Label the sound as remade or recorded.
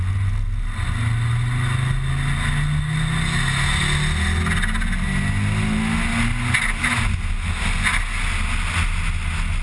recorded